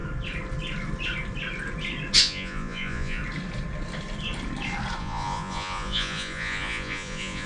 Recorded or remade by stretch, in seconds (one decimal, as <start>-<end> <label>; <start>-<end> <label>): 0.0-2.2 recorded; 2.2-3.2 remade; 3.2-5.0 recorded; 5.0-7.5 remade